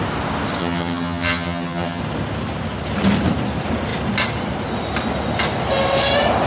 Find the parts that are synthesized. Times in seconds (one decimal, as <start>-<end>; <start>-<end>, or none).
0.6-2.0